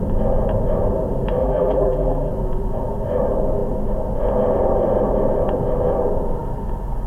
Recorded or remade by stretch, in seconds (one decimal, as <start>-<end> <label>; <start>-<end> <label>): 0.0-1.4 recorded; 1.4-2.3 remade; 2.3-7.1 recorded